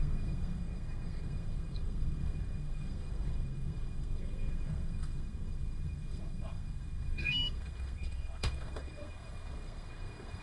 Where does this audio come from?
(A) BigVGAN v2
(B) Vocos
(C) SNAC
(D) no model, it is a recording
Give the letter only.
C